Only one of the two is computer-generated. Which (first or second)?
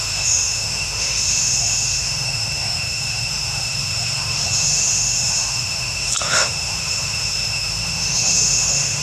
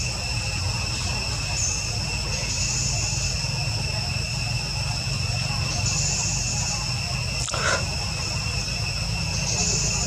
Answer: first